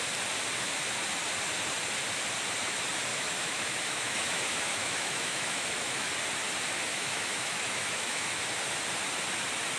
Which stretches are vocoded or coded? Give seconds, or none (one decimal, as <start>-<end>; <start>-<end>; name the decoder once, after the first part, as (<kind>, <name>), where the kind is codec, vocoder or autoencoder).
3.1-6.1 (autoencoder, DAC-VAE); 6.9-8.4